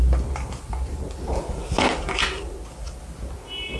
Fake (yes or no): no